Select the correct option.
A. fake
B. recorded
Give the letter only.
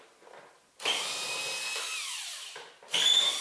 B